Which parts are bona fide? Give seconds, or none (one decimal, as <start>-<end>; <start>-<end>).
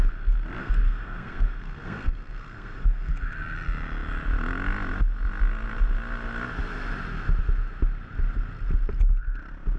0.0-0.6; 3.1-9.8